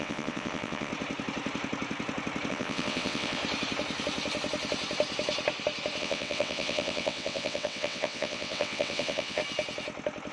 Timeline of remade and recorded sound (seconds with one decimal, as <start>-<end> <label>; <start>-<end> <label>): 0.0-0.9 remade; 0.9-2.5 recorded; 2.5-3.4 remade; 3.4-6.0 recorded; 6.0-9.4 remade; 9.4-10.3 recorded